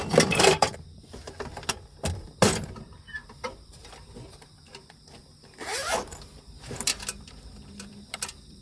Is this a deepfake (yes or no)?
yes